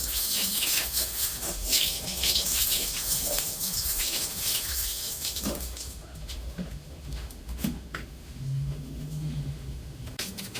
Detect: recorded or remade remade